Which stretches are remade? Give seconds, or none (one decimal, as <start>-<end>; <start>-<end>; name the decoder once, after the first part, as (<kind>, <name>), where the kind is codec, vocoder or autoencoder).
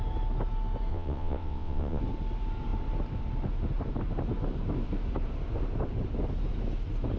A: 0.9-2.0 (vocoder, WaveNeXt)